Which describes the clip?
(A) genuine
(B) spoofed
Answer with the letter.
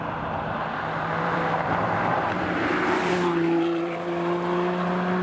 B